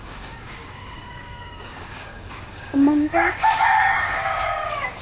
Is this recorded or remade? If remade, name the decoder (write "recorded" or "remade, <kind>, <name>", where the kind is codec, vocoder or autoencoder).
remade, codec, DAC